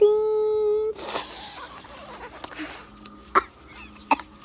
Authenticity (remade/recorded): recorded